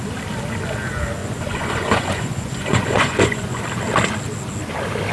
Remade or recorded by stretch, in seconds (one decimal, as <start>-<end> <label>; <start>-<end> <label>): 0.0-1.2 recorded; 1.2-3.6 remade; 3.6-5.1 recorded